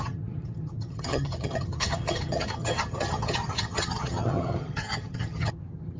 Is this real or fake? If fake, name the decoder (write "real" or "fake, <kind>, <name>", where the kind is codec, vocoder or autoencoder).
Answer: fake, vocoder, HiFi-GAN